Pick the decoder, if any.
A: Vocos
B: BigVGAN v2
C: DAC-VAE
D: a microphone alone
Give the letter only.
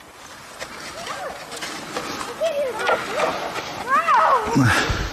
D